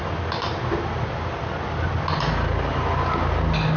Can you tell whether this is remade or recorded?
recorded